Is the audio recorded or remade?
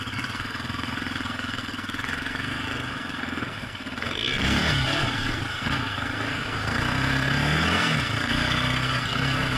remade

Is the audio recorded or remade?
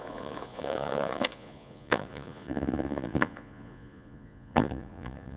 remade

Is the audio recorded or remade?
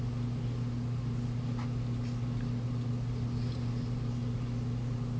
recorded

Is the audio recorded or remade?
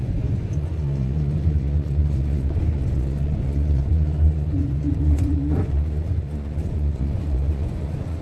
remade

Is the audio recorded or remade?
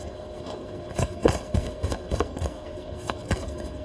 remade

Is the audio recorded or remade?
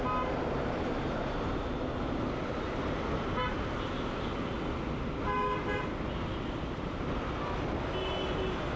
recorded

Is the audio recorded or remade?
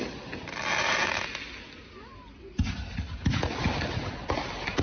recorded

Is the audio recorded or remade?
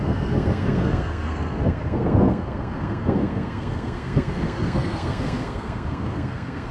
remade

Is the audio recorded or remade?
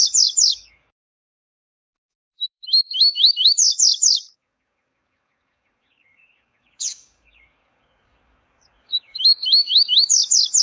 remade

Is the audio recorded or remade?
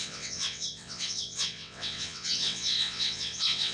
remade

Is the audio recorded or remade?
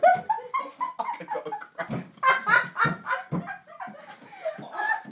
recorded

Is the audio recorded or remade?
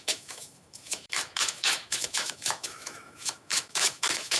remade